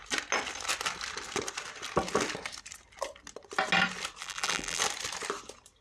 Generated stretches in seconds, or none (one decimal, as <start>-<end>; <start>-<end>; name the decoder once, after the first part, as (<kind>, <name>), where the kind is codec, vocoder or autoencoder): 4.2-4.8 (vocoder, BigVGAN v2)

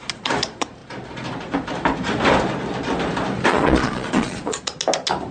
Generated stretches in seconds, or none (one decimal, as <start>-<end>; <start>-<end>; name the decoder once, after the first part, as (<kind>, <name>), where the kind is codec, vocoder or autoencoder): 3.5-4.6 (vocoder, Vocos)

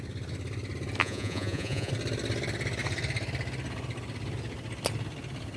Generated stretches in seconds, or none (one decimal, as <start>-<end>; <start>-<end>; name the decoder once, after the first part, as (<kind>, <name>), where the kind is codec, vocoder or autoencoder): 1.0-1.9 (vocoder, Vocos)

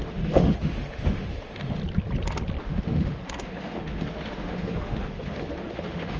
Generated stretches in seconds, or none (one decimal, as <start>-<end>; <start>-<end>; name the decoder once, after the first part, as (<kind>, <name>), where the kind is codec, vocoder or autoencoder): 0.0-1.8 (autoencoder, DAC-VAE); 2.6-6.2

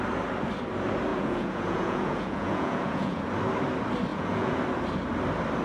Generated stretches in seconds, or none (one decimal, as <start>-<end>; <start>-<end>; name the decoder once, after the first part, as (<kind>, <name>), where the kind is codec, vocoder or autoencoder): 1.1-3.2 (vocoder, Vocos); 4.1-4.6